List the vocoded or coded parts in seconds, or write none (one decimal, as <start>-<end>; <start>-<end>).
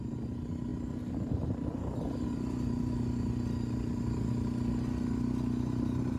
none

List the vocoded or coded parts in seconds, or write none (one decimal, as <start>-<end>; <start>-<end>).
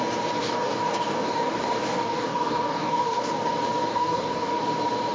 0.4-3.5; 3.9-4.6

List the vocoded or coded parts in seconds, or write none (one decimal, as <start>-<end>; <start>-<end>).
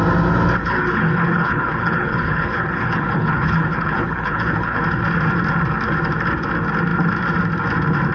0.6-4.8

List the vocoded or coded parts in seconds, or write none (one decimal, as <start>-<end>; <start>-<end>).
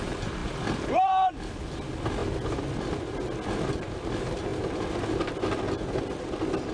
0.4-1.1